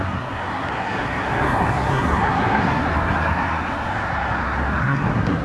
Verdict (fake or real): fake